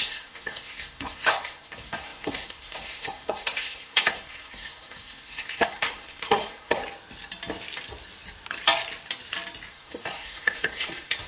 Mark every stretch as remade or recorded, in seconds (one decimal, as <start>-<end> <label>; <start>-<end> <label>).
0.0-6.8 remade; 6.8-9.7 recorded; 9.7-11.3 remade